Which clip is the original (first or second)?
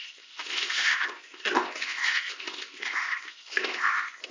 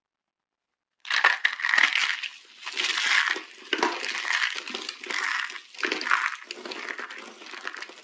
second